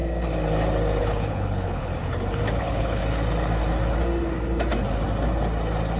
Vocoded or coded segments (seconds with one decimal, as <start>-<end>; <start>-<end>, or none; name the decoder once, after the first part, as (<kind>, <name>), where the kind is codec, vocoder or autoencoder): 1.0-1.9 (codec, HILCodec); 2.6-3.0